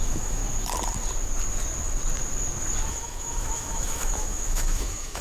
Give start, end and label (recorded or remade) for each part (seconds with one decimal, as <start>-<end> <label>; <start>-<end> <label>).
0.0-0.4 remade; 0.4-2.9 recorded; 2.9-5.2 remade